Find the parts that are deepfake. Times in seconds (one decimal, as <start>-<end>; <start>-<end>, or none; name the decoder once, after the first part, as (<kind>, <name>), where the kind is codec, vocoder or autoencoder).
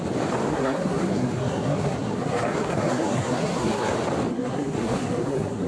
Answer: 0.5-3.9 (codec, SNAC); 4.3-5.7